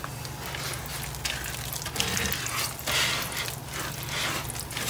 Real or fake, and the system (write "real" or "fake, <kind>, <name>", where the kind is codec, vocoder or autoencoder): real